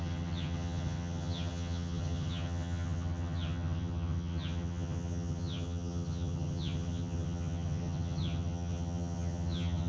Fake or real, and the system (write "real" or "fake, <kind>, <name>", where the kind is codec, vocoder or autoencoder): fake, vocoder, HiFi-GAN